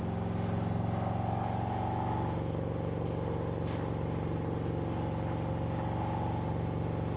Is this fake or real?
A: real